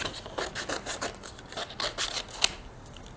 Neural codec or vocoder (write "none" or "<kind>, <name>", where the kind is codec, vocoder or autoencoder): none